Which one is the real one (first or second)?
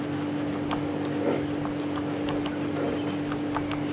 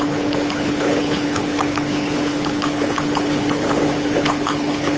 first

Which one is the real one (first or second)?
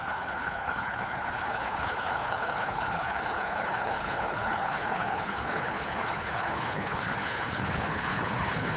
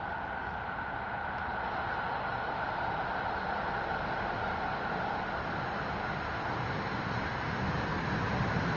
second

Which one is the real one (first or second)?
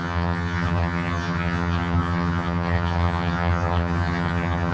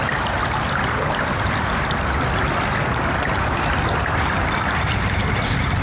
second